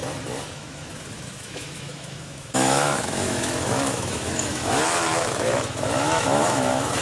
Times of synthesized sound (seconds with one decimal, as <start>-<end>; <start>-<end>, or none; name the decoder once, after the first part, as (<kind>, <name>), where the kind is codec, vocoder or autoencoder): 0.5-7.0 (autoencoder, DAC-VAE)